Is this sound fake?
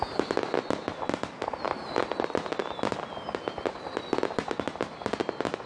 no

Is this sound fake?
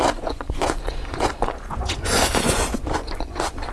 yes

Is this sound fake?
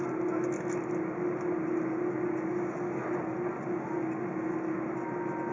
no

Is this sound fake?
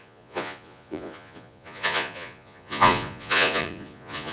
yes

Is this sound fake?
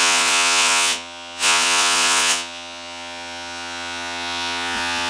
yes